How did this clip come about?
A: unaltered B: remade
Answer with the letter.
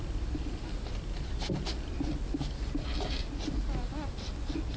A